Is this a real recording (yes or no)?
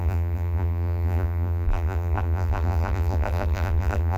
no